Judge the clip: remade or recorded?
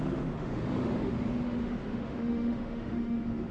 remade